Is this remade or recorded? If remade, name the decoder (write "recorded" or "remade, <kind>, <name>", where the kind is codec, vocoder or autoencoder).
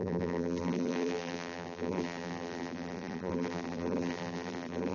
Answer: remade, vocoder, BigVGAN v2